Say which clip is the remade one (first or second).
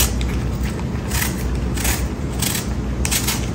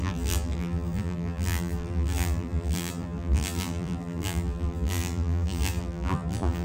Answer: second